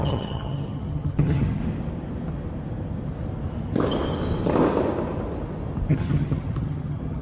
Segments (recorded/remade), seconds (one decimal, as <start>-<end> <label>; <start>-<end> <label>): 0.0-1.6 remade; 1.6-5.9 recorded; 5.9-7.2 remade